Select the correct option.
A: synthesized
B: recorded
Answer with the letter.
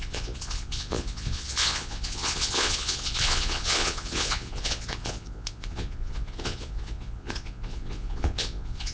A